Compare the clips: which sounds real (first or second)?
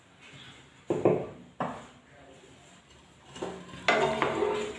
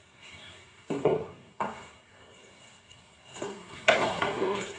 first